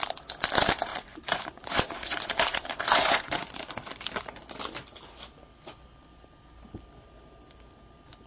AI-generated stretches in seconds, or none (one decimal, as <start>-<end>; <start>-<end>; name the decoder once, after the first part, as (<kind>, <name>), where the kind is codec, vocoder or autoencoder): 0.9-3.6 (vocoder, Vocos)